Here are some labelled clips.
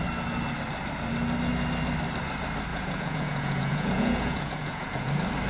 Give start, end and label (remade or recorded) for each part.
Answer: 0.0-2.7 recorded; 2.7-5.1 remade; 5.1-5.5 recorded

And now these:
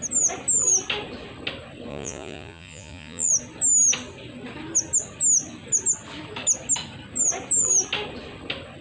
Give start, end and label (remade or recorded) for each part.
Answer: 0.0-1.9 recorded; 1.9-3.3 remade; 3.3-8.8 recorded

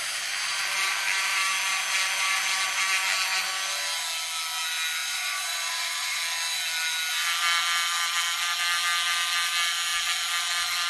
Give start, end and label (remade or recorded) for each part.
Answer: 0.0-5.0 recorded; 5.0-6.2 remade; 6.2-10.9 recorded

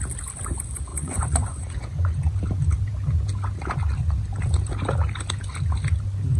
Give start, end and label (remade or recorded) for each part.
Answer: 0.0-0.9 recorded; 0.9-2.3 remade; 2.3-6.4 recorded